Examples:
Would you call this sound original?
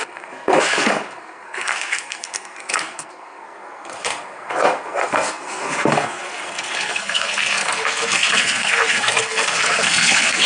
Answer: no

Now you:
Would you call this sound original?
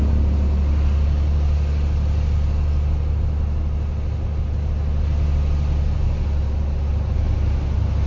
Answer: yes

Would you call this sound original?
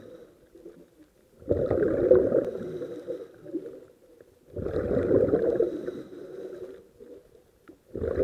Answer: yes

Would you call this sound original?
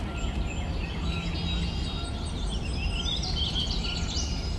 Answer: yes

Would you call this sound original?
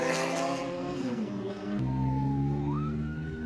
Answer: no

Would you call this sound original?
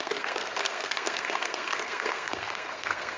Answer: no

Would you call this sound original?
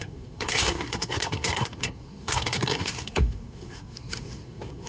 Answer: no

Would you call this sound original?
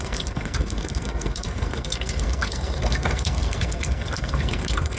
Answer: no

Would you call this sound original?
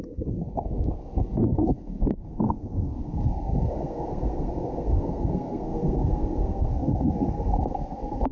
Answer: no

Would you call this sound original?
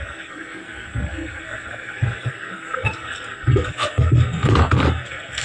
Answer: no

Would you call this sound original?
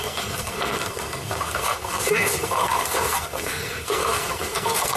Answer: no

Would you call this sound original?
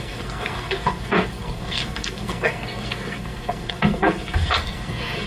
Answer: no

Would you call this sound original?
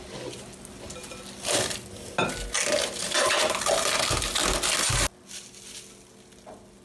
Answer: yes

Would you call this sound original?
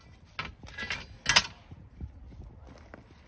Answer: yes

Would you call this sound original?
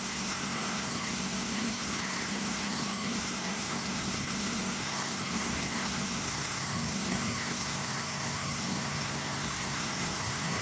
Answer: no